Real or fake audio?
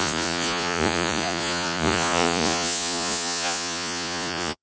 fake